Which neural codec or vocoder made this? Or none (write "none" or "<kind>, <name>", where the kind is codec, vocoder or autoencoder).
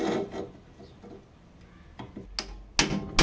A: none